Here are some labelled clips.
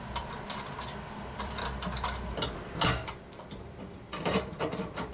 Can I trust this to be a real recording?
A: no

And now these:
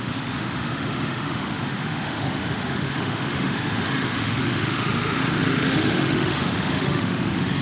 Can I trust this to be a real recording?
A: no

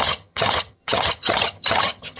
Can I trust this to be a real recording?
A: no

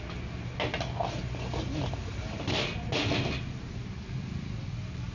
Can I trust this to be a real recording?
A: yes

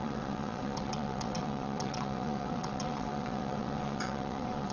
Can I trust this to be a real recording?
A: no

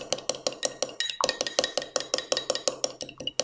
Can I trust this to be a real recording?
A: yes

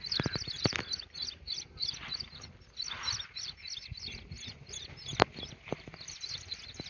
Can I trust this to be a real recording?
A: yes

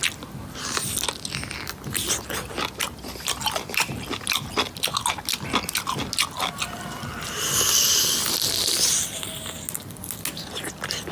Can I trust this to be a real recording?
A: yes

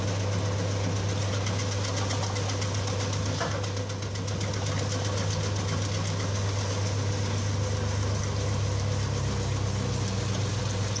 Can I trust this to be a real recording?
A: yes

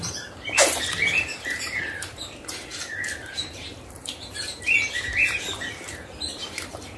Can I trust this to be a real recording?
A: no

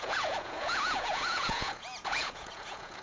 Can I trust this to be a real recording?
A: no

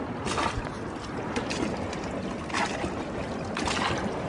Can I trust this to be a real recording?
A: yes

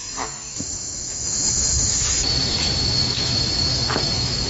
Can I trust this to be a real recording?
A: no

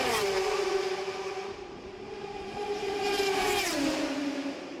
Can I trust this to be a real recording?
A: no